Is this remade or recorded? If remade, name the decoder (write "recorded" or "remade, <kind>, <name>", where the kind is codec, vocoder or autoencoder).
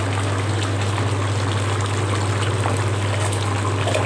recorded